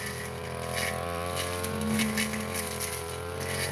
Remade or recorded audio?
recorded